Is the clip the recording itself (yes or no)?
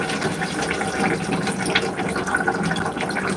yes